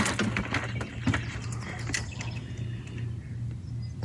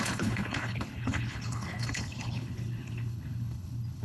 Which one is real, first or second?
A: first